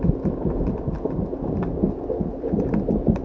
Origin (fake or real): real